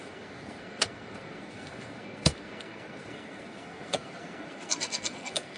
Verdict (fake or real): fake